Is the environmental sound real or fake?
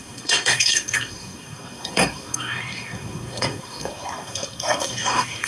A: fake